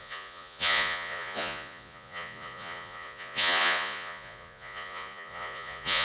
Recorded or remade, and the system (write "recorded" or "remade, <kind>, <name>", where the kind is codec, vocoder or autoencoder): remade, vocoder, Vocos